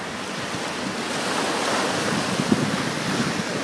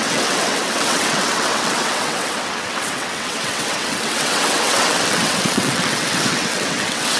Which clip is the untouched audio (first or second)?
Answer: first